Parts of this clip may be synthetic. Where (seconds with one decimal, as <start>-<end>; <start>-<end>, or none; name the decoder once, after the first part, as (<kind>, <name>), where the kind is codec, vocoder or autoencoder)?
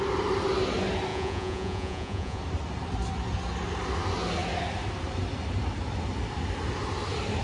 1.1-2.4 (vocoder, Vocos)